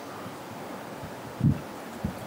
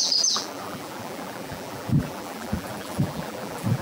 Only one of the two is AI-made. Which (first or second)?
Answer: second